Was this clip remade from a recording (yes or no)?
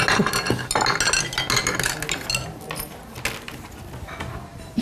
no